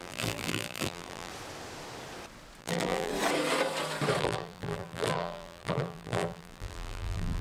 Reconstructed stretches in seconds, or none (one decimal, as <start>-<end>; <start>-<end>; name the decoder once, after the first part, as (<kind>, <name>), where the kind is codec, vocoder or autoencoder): 0.0-1.3 (vocoder, BigVGAN v2); 2.6-3.1; 4.2-7.4